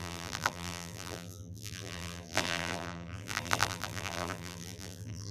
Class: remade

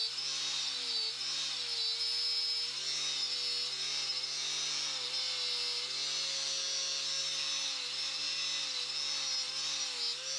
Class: recorded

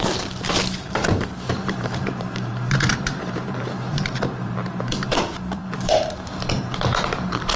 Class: remade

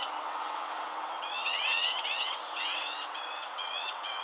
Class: remade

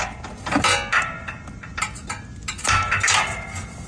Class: recorded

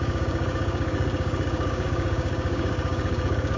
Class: remade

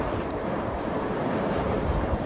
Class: remade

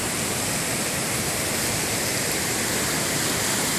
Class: remade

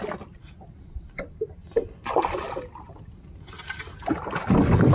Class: recorded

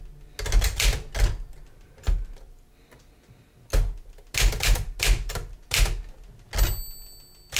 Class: recorded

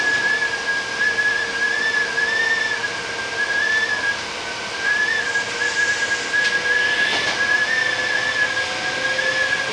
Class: recorded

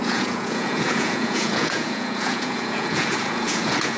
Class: remade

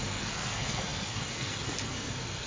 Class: remade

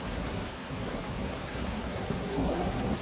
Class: remade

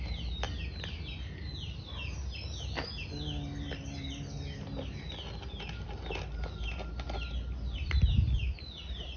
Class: recorded